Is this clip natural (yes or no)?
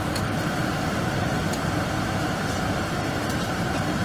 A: no